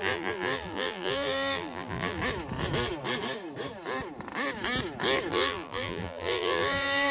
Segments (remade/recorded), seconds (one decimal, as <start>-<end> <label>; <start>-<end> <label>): 0.0-2.2 remade; 2.2-5.3 recorded; 5.3-7.1 remade